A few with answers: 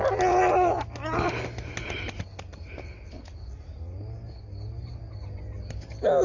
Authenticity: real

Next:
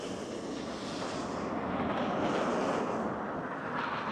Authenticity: real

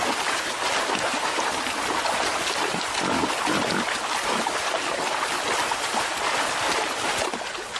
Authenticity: real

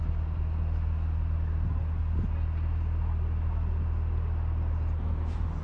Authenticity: real